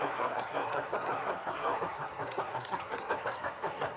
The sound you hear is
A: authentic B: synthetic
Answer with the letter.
B